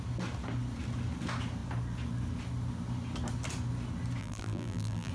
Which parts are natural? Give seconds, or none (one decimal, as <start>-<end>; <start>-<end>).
0.0-4.2